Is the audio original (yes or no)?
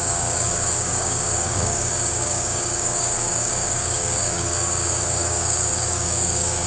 no